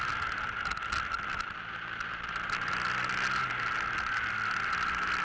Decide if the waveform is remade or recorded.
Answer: recorded